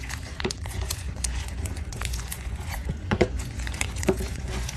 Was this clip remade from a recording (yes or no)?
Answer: yes